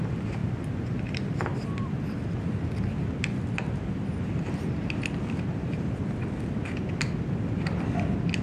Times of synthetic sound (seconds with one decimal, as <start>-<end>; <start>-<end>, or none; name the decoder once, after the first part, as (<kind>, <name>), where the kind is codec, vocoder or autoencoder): none